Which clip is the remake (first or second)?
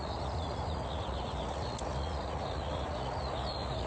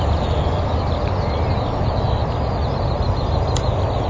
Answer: first